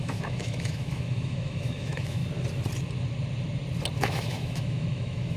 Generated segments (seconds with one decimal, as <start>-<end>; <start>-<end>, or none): 0.0-2.2; 4.0-5.4